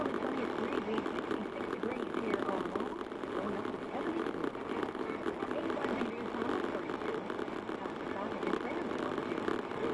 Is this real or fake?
real